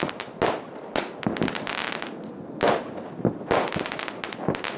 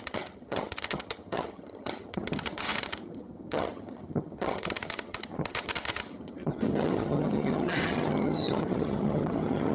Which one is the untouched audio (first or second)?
first